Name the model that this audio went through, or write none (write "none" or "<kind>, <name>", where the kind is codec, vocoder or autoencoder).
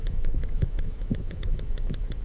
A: autoencoder, DAC-VAE